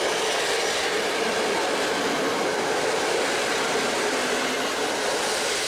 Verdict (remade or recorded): recorded